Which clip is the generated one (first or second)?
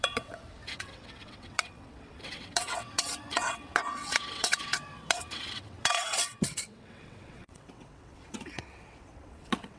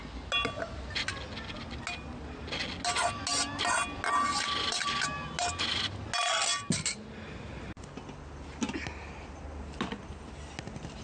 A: first